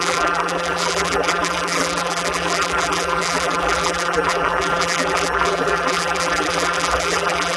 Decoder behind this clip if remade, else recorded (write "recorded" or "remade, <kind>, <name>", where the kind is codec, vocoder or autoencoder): remade, vocoder, BigVGAN v2